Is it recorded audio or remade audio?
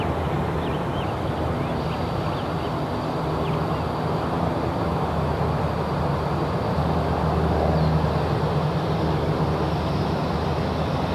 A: recorded